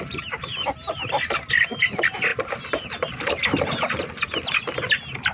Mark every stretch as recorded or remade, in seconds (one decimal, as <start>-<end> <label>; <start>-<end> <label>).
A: 0.0-5.3 recorded